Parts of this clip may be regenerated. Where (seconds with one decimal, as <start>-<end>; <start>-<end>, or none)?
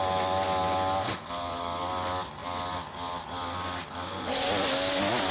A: none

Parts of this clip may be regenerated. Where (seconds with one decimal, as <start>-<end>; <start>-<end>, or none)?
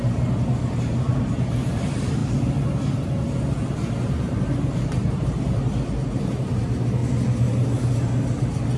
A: 0.0-2.2; 4.1-7.0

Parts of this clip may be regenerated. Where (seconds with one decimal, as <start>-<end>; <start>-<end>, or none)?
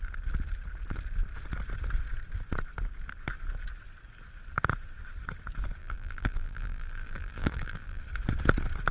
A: 5.8-8.0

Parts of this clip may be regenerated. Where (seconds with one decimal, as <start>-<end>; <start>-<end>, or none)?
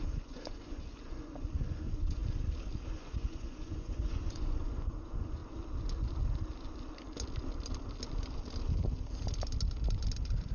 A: 0.0-2.2; 2.9-5.4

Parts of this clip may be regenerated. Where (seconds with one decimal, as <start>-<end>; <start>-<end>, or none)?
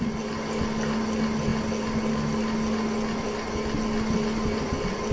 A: none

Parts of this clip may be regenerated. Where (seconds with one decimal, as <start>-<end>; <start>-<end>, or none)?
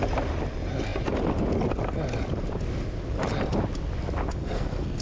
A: 4.4-5.0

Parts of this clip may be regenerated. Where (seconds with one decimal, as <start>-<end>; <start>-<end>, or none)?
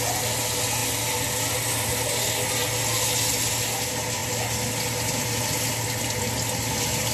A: none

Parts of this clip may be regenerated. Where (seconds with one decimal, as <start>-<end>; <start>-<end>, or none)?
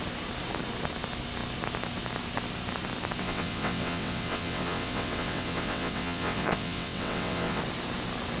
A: 3.2-7.6